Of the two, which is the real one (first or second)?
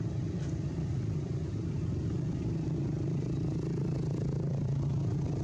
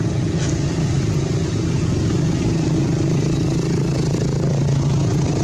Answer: second